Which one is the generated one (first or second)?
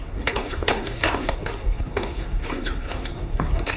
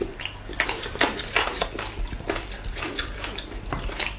first